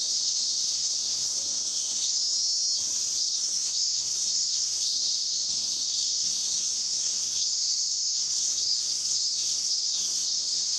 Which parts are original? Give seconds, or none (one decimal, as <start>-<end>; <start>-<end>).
2.2-3.2